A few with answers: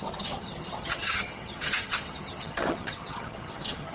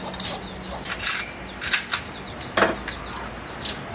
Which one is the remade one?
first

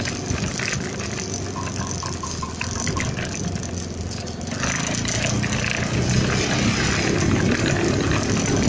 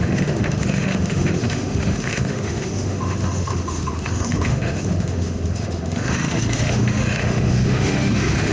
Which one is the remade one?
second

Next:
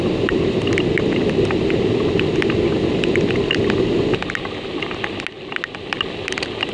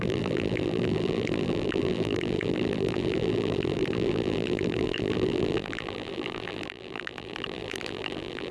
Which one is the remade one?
second